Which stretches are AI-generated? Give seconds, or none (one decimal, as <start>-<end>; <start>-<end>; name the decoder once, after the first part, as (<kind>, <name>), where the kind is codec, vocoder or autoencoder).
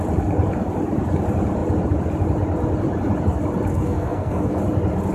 3.7-4.6 (codec, SNAC)